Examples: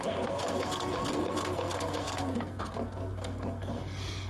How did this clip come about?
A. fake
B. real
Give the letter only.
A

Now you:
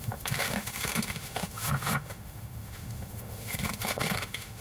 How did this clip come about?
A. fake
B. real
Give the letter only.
A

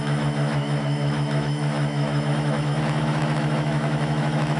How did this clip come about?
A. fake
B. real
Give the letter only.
A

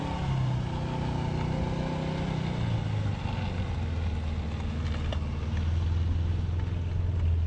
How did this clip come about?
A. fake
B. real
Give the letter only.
B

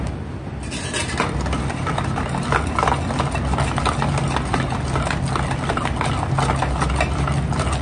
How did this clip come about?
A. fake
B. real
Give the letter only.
B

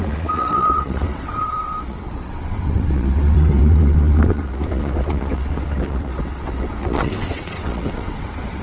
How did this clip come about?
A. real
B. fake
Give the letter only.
B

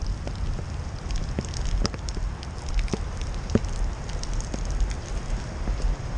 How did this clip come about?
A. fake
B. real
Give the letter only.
B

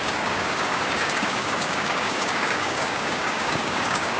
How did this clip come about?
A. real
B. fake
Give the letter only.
B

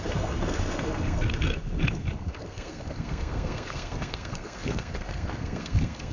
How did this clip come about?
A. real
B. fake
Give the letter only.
B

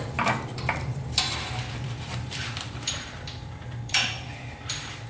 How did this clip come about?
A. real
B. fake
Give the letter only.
B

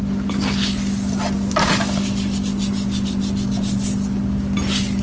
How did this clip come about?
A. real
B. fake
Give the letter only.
A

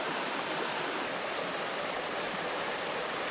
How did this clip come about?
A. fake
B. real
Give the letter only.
B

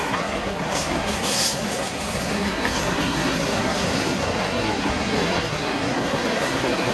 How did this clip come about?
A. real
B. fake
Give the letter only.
B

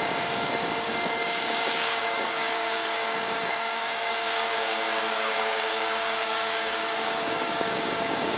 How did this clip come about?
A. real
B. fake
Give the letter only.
B